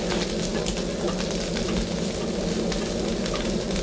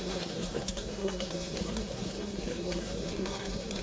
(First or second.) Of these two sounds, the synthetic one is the second